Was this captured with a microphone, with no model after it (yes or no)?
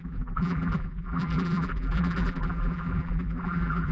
no